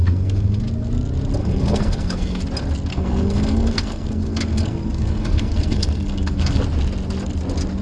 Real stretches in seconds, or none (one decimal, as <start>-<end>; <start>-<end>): 0.6-1.4; 2.4-2.9; 6.6-7.8